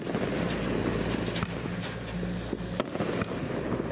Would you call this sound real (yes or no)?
yes